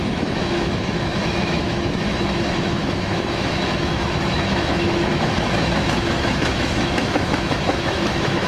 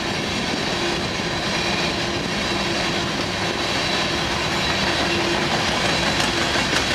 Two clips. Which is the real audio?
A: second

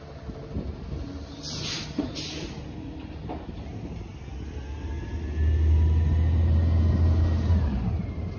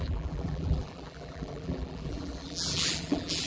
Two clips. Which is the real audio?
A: first